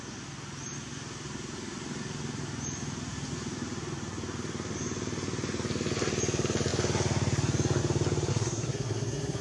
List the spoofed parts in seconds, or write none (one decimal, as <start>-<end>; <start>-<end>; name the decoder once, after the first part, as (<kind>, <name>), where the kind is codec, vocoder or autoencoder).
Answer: 8.3-9.4 (codec, SNAC)